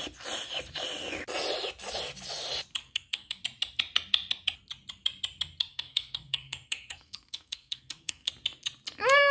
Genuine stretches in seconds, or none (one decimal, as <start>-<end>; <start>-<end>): 0.0-2.8; 3.4-5.7; 8.3-9.3